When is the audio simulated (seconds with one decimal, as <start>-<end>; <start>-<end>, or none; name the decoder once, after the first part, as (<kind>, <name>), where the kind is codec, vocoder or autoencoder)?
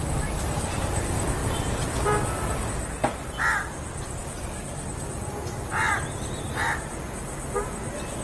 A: none